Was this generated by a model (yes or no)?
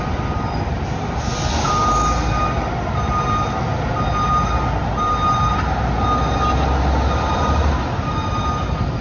no